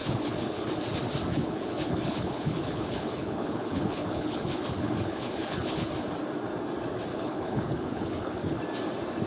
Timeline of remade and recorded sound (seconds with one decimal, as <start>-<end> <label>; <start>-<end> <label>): 0.0-0.7 remade; 0.7-1.3 recorded; 1.3-5.9 remade; 5.9-7.1 recorded; 7.1-8.6 remade; 8.6-9.3 recorded